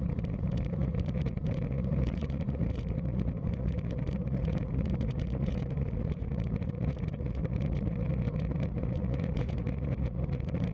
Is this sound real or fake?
fake